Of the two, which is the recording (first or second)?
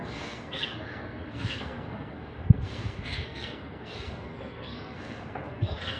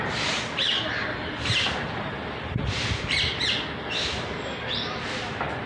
second